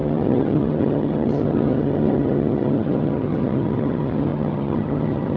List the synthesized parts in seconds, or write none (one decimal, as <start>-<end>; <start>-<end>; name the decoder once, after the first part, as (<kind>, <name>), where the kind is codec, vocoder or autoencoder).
0.0-5.4 (vocoder, HiFi-GAN)